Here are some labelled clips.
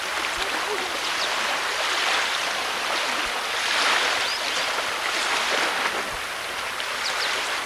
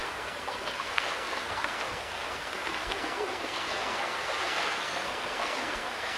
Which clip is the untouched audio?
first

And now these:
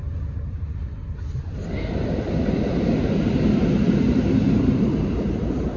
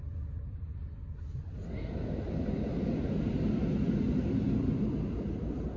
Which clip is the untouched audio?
second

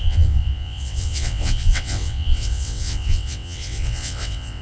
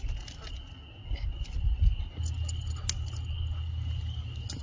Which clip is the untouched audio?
second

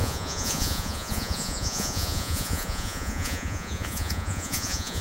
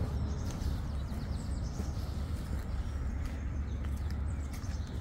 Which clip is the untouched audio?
second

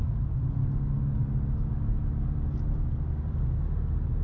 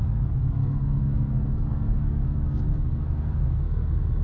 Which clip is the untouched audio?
first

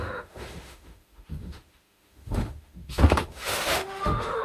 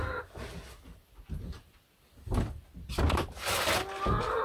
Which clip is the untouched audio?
second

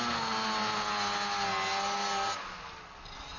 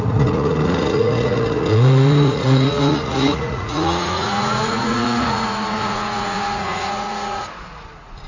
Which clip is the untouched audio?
first